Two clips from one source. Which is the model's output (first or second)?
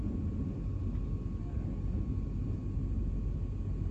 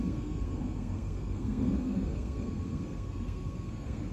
second